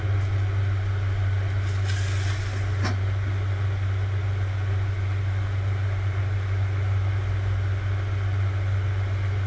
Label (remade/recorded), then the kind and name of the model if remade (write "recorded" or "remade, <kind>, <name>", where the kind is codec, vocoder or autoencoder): recorded